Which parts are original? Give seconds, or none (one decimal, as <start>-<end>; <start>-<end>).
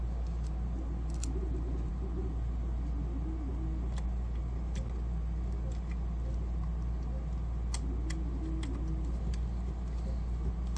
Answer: 0.0-10.8